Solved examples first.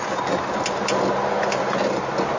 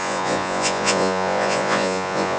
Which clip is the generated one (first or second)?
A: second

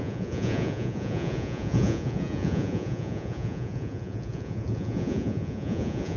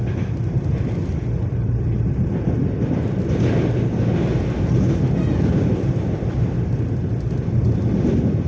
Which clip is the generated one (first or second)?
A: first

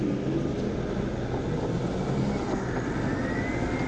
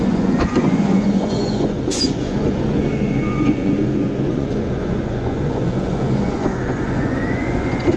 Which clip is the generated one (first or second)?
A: second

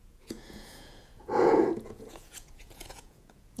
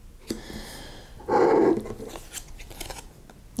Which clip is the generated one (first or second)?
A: first